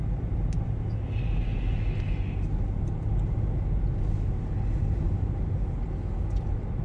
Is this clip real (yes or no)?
yes